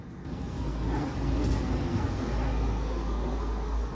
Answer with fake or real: fake